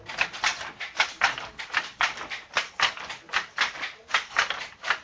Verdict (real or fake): real